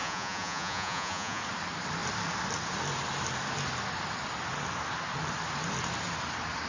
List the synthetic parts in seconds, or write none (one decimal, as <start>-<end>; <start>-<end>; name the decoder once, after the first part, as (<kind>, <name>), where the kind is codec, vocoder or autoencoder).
0.0-1.4 (vocoder, Vocos)